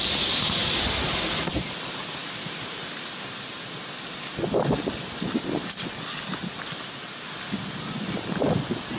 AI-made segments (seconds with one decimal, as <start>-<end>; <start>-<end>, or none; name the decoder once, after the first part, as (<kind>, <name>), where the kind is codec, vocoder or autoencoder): none